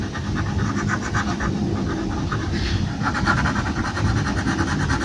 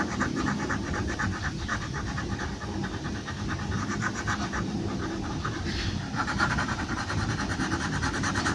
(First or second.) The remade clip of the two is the second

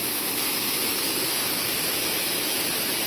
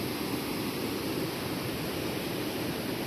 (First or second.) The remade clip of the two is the first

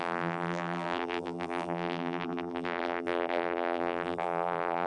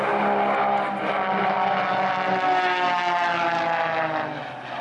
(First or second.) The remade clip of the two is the first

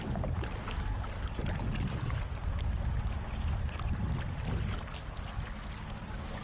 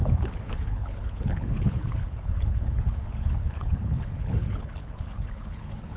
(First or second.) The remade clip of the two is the second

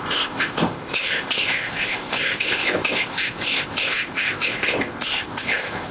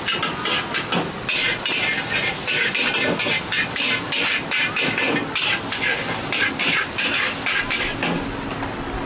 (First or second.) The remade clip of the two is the first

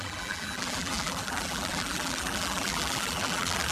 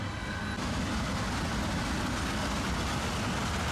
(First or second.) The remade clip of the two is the first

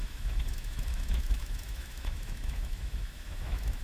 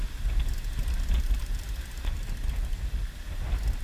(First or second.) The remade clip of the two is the first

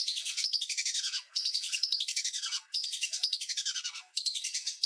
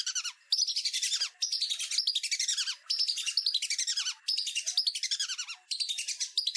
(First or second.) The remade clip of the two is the first